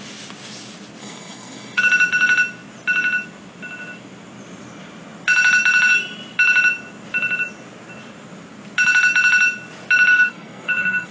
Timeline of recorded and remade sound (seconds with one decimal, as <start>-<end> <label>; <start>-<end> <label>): 0.0-1.0 recorded; 1.0-1.8 remade; 1.8-10.1 recorded; 10.1-11.1 remade